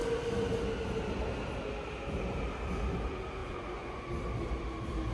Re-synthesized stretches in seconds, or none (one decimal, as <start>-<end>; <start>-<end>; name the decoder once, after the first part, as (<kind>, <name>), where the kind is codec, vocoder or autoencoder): 3.4-4.1 (vocoder, Vocos)